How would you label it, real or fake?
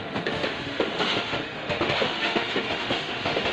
fake